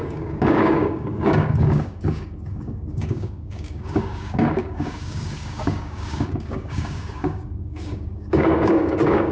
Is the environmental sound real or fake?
fake